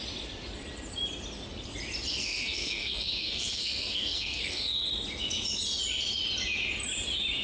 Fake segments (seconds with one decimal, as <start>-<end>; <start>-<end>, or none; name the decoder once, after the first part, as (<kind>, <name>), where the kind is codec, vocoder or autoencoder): 2.1-4.9 (codec, SNAC)